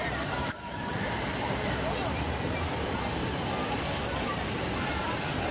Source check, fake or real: fake